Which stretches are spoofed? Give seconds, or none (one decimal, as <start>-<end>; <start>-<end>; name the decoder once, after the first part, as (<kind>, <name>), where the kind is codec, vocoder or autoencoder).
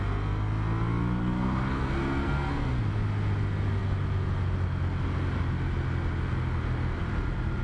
1.2-2.8 (codec, SNAC)